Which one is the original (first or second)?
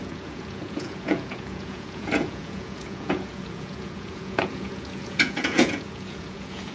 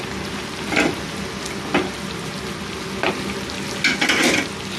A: second